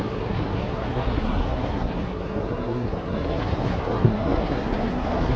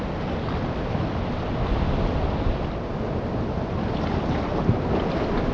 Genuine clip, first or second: second